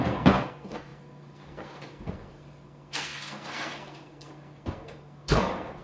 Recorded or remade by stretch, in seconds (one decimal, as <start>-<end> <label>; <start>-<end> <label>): 0.0-5.8 remade